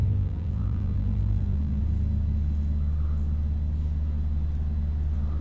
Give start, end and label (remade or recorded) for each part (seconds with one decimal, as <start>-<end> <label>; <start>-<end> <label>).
0.0-1.8 remade; 1.8-5.4 recorded